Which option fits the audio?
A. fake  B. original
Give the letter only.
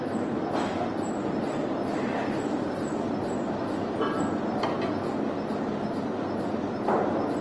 B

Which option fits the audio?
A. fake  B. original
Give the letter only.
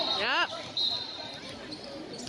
B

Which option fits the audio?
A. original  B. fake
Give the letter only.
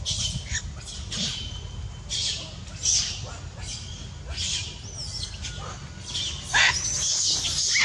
A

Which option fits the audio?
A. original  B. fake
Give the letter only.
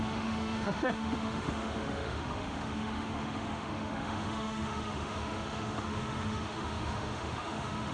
B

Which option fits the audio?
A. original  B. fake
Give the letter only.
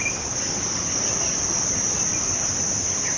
A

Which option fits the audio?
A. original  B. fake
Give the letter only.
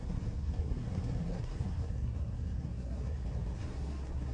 B